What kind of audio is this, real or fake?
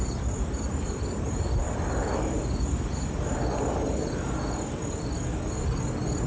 real